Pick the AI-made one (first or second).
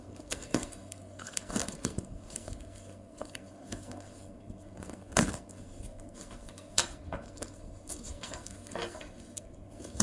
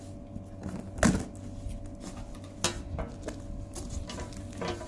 first